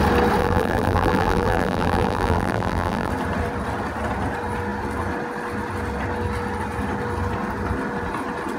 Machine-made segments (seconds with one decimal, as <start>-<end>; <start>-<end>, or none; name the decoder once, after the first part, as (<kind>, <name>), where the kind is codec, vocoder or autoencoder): 0.4-3.1 (vocoder, BigVGAN v2)

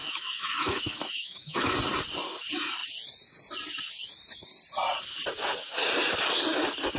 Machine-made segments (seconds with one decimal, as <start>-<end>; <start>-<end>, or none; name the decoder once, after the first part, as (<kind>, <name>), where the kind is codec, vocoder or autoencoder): 0.0-1.7 (autoencoder, DAC-VAE)

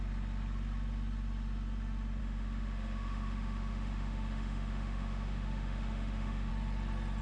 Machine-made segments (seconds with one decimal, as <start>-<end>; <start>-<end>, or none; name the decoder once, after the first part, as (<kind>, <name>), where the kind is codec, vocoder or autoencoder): 2.2-6.5 (autoencoder, DAC-VAE)

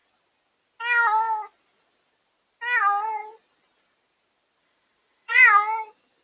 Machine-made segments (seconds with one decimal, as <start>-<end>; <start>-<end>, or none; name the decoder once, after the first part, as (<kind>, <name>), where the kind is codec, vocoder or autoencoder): 4.6-5.4 (vocoder, Vocos)